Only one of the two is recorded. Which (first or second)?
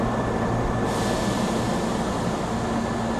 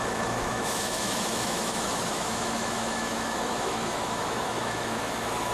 first